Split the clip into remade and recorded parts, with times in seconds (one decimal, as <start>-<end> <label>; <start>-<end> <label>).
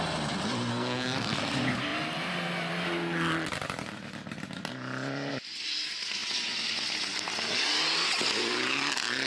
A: 0.0-0.7 recorded; 0.7-1.4 remade; 1.4-9.3 recorded